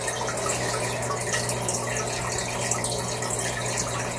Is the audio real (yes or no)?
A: yes